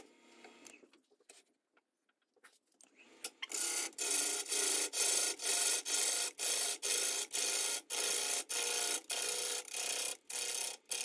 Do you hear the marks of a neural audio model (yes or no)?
no